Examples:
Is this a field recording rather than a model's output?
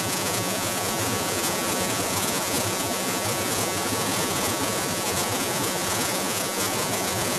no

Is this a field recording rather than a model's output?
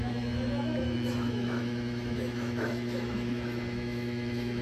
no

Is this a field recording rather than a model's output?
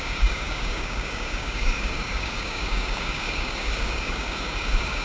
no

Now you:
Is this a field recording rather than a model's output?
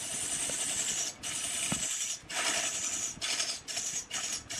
yes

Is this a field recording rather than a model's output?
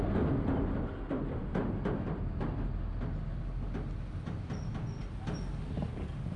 yes